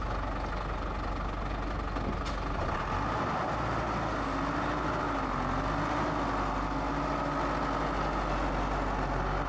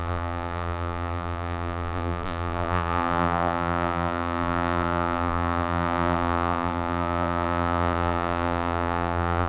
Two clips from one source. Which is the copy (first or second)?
second